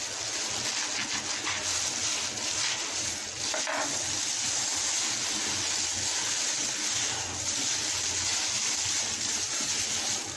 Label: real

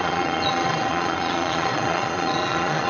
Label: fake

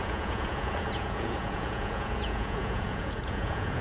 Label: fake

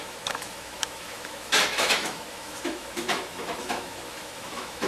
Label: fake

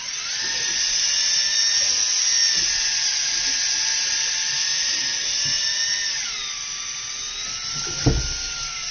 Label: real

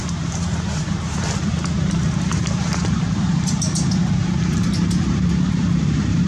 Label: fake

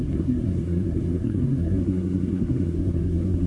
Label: fake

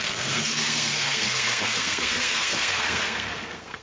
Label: fake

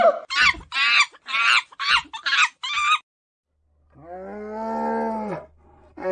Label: real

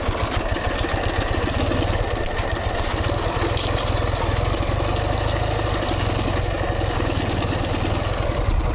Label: real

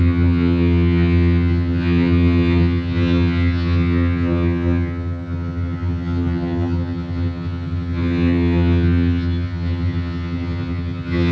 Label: fake